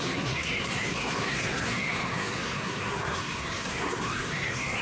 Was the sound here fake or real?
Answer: fake